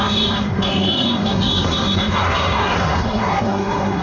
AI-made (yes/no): yes